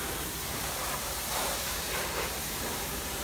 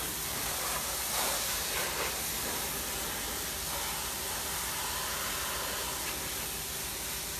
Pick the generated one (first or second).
first